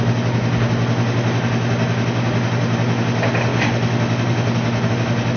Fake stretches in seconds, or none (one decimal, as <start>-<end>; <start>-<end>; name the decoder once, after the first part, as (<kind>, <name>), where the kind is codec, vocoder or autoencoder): none